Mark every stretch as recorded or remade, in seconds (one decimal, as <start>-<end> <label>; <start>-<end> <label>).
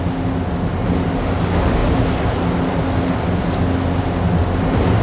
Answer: 0.0-5.0 recorded